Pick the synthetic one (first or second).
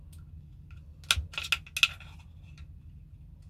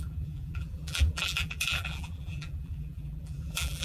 second